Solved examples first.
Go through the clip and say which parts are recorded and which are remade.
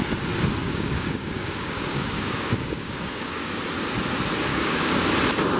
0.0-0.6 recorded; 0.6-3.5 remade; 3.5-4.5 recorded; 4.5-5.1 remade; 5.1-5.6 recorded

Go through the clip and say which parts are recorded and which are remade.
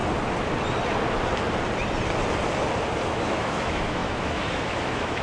0.0-3.1 recorded; 3.1-5.2 remade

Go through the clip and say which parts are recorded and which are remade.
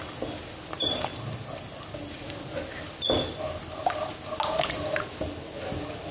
0.0-6.1 recorded